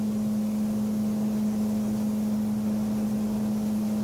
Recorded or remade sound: recorded